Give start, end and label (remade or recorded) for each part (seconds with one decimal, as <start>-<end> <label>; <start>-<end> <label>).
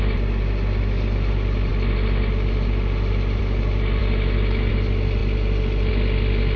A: 0.0-5.2 recorded; 5.2-5.9 remade; 5.9-6.6 recorded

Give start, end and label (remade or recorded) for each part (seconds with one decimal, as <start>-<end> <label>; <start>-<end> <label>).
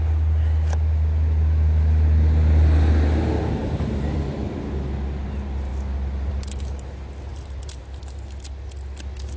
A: 0.0-3.6 recorded; 3.6-4.7 remade; 4.7-9.4 recorded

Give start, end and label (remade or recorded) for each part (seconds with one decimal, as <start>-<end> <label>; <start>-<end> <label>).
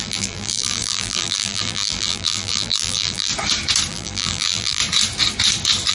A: 0.0-3.3 remade; 3.3-3.9 recorded; 3.9-4.8 remade; 4.8-5.9 recorded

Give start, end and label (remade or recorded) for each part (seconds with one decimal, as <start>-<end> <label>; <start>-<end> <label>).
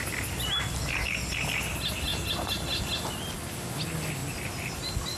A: 0.0-5.2 recorded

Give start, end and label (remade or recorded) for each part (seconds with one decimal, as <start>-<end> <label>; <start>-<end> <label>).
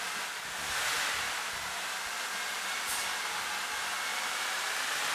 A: 0.0-4.1 recorded; 4.1-5.1 remade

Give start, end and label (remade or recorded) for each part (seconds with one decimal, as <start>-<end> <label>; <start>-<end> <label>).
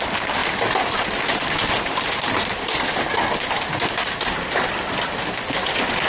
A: 0.0-6.1 recorded